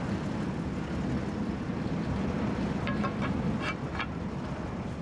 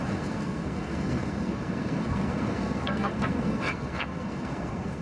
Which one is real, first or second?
first